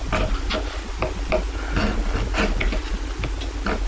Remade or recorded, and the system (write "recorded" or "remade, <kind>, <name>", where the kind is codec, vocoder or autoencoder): recorded